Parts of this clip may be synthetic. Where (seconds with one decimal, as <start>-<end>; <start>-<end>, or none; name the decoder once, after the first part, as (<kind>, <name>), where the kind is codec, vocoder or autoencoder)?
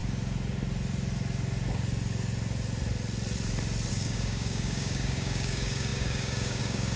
3.9-7.0 (codec, DAC)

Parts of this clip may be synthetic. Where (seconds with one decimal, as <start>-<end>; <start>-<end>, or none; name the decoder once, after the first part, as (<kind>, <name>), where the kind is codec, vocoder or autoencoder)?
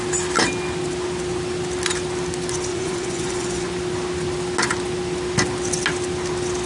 2.7-3.7 (vocoder, Vocos)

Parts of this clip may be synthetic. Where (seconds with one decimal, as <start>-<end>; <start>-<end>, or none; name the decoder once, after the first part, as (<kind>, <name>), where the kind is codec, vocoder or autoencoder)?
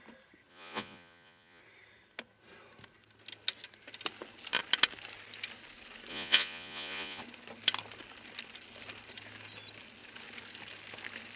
0.5-1.6 (vocoder, Vocos); 6.1-7.2